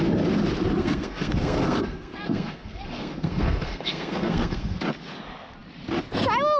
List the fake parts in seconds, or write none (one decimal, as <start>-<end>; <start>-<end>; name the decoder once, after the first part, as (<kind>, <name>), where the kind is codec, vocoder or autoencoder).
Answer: 0.8-4.8 (codec, SNAC)